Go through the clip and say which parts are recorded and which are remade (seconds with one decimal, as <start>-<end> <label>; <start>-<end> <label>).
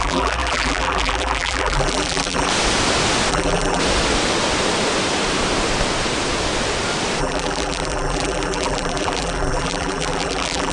0.0-2.5 remade; 2.5-3.3 recorded; 3.3-3.8 remade; 3.8-7.2 recorded; 7.2-10.7 remade